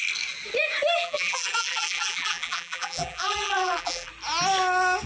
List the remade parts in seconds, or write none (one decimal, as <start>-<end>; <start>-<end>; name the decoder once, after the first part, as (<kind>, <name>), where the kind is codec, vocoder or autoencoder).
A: 1.0-4.1 (vocoder, BigVGAN v2)